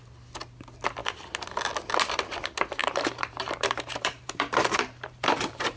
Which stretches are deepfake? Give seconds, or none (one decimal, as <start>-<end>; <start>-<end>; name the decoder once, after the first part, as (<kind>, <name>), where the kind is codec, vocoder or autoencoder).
2.8-5.8 (vocoder, BigVGAN v2)